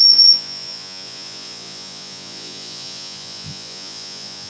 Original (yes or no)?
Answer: no